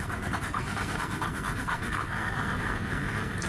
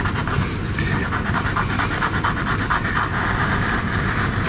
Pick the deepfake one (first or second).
first